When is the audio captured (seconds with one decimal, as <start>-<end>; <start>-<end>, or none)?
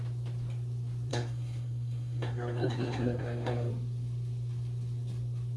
0.0-1.1; 3.7-5.6